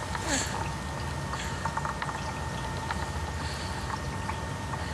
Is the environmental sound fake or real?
real